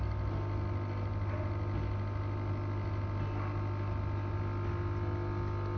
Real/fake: real